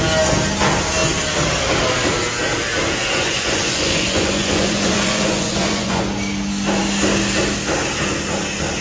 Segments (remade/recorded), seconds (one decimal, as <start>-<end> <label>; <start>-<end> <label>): 0.0-3.0 recorded; 3.0-6.0 remade; 6.0-8.8 recorded